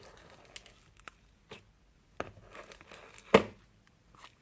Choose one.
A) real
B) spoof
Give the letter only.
A